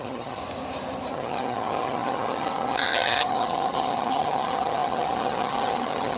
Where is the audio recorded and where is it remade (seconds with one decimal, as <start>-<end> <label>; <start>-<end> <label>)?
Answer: 0.0-0.4 remade; 0.4-1.1 recorded; 1.1-6.2 remade